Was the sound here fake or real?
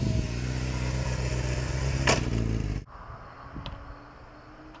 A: real